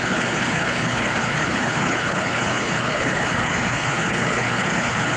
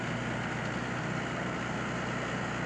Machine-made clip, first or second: first